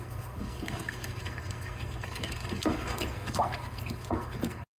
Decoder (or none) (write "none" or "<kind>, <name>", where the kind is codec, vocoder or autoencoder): codec, SNAC